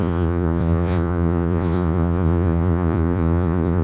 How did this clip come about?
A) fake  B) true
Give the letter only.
A